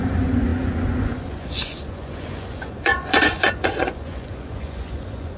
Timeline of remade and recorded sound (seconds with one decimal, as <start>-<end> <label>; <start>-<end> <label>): 0.0-5.4 remade